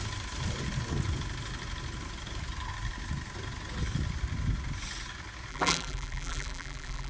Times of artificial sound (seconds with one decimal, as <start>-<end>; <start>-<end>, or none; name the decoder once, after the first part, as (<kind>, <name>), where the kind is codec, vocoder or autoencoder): 5.5-7.1 (vocoder, BigVGAN v2)